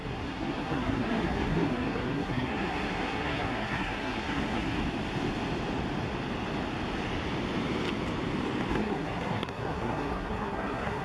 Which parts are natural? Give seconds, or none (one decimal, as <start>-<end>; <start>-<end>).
4.8-8.7